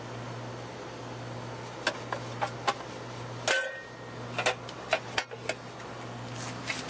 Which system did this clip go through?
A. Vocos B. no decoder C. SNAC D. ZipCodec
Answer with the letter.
B